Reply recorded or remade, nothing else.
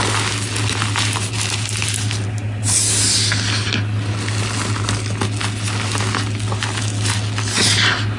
recorded